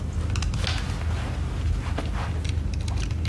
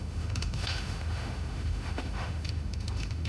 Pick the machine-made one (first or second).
second